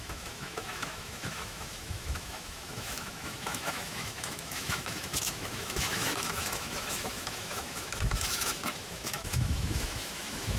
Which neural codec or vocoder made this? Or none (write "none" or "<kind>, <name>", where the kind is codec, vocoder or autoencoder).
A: autoencoder, DAC-VAE